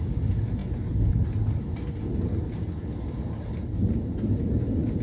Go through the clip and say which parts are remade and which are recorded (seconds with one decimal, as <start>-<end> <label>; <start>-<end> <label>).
0.0-5.0 recorded